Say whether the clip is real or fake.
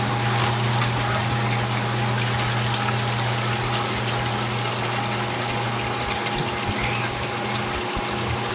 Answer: real